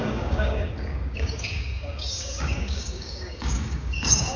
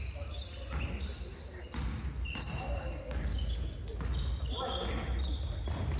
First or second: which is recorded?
second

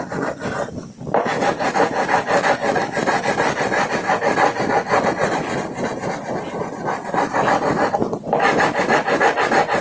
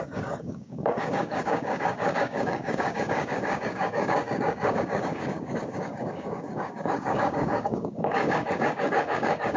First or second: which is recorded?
first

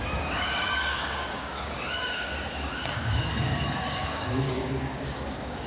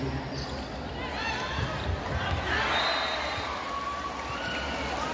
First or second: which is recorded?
second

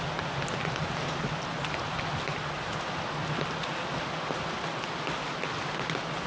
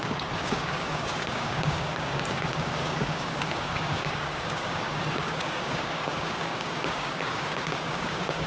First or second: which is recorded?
first